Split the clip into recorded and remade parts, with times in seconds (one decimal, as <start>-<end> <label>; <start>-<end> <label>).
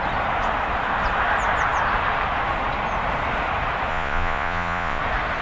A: 0.0-3.9 recorded; 3.9-5.0 remade; 5.0-5.4 recorded